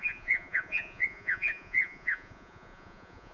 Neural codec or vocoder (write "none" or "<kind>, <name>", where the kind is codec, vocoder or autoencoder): vocoder, Vocos